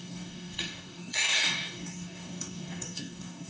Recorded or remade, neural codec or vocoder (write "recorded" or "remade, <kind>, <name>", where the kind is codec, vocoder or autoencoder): remade, codec, DAC